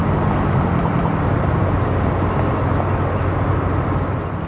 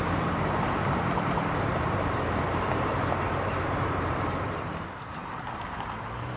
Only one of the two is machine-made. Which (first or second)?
second